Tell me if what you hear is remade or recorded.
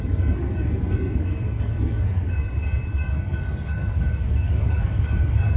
remade